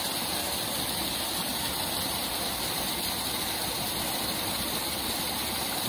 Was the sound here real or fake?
real